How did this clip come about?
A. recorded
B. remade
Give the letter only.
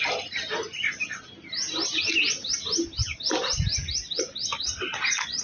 A